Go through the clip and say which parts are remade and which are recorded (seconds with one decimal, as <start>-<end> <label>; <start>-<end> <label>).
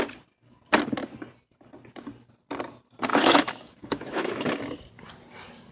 0.0-3.1 recorded; 3.1-4.5 remade; 4.5-5.7 recorded